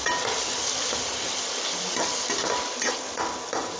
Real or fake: real